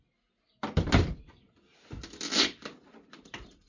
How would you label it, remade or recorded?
recorded